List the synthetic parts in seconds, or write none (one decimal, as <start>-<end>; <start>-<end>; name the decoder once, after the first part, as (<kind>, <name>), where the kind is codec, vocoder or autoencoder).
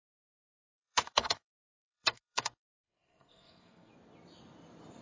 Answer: 0.0-3.9 (codec, SNAC)